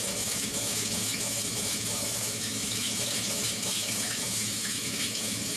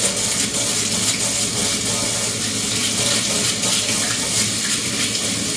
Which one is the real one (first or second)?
second